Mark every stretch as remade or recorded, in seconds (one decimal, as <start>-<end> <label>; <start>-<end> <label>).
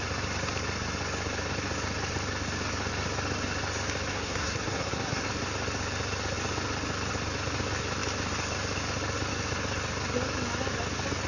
0.0-4.1 recorded; 4.1-5.3 remade; 5.3-11.3 recorded